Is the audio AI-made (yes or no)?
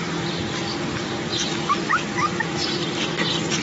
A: no